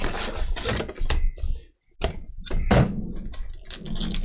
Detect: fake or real real